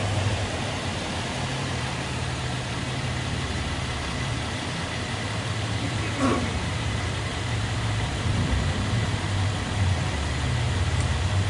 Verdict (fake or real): fake